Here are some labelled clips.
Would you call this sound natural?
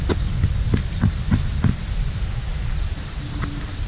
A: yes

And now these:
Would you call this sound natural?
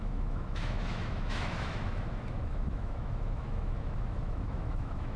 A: no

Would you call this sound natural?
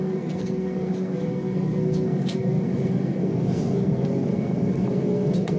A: no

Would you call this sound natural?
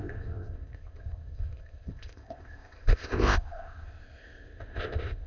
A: no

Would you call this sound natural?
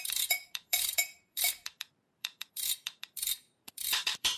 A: no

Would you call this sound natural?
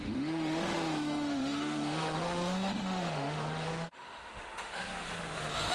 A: no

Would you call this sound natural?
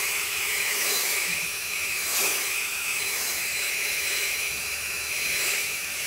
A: no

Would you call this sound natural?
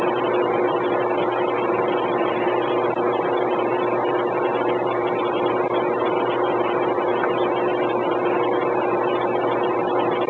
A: yes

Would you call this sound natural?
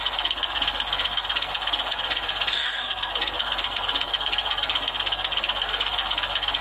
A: no